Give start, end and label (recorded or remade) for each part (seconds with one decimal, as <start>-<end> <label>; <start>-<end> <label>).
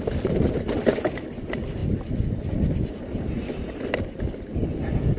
0.0-5.2 recorded